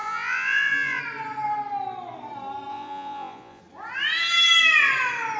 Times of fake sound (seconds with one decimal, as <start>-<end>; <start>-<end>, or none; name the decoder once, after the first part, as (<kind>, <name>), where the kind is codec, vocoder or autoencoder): 0.0-1.0 (vocoder, Vocos); 2.7-3.6